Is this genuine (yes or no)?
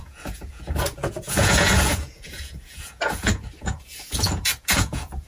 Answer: no